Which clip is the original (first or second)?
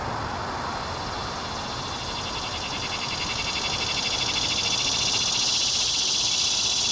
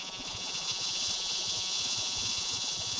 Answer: first